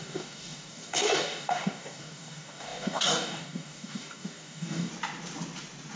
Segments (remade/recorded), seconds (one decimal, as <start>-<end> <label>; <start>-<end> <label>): 0.0-4.9 remade; 4.9-6.0 recorded